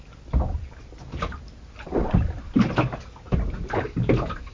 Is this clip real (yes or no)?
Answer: yes